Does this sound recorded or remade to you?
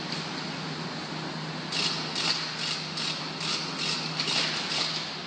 recorded